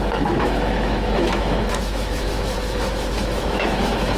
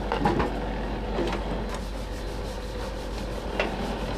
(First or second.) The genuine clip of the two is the second